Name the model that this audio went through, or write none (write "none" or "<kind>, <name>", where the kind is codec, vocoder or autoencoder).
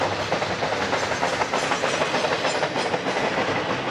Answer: none